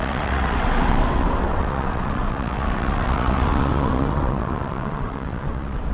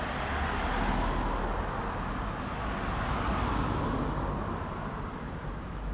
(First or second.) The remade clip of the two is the first